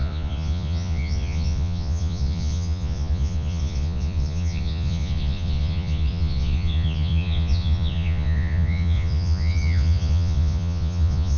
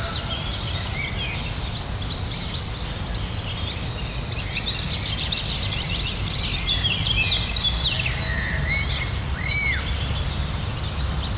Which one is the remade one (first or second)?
first